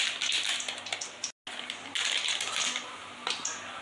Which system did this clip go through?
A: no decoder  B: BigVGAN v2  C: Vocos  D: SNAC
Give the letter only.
A